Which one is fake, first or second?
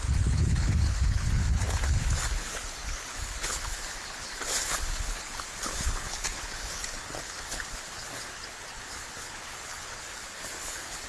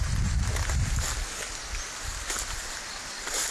first